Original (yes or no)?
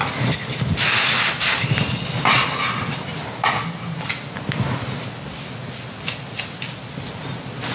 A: yes